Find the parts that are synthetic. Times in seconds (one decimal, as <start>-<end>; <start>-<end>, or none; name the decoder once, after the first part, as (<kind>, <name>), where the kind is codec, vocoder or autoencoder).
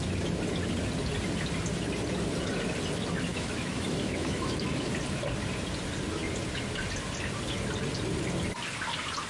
3.3-4.9 (autoencoder, DAC-VAE)